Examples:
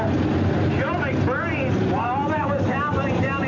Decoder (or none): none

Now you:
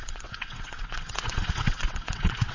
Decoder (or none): vocoder, WaveNeXt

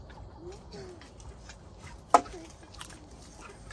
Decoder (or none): none